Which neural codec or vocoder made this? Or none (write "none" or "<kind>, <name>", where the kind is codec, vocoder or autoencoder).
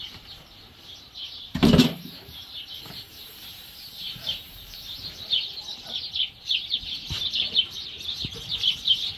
vocoder, BigVGAN v2